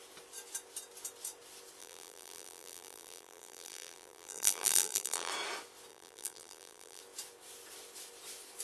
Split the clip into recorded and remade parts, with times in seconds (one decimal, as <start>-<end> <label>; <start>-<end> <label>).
0.0-1.8 recorded; 1.8-5.3 remade; 5.3-5.9 recorded; 5.9-7.0 remade; 7.0-8.6 recorded